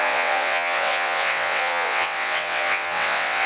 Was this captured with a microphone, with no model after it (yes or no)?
no